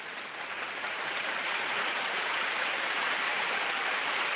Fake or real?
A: real